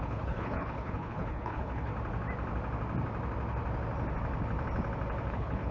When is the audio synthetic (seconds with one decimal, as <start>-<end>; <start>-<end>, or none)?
0.0-1.9; 5.3-5.7